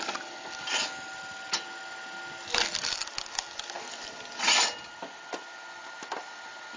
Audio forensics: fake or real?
real